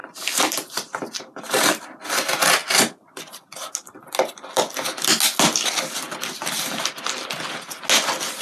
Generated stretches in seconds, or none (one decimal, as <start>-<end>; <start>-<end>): 0.0-2.0